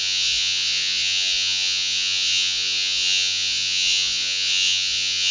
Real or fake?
fake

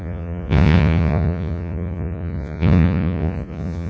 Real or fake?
fake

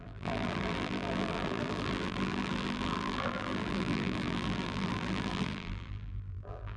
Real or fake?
fake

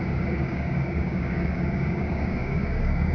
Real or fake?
fake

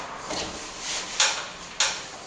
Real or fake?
real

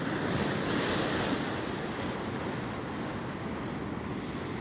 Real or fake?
real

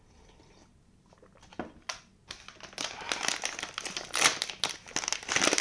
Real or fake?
real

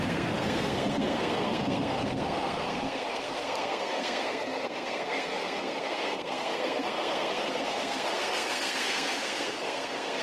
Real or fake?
fake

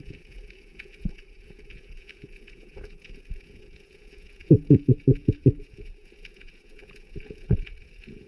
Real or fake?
fake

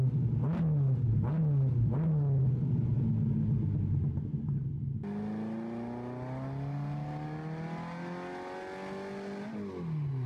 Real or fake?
real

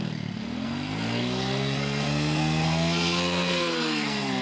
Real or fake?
fake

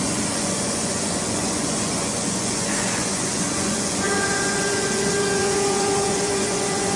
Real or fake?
fake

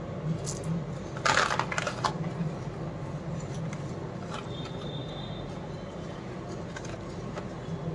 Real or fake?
real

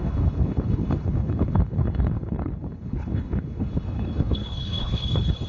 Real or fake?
fake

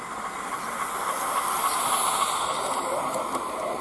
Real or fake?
real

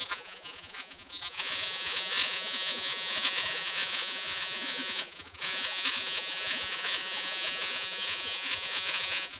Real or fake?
fake